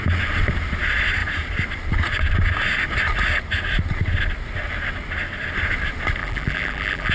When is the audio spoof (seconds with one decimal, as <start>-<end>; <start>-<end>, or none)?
6.2-7.1